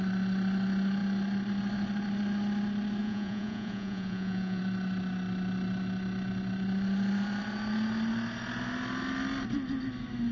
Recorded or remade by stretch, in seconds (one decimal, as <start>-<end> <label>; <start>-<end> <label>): 0.0-3.0 recorded; 3.0-4.6 remade; 4.6-10.3 recorded